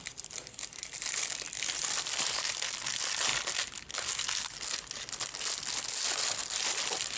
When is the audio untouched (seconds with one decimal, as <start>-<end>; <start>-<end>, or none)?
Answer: 3.3-6.1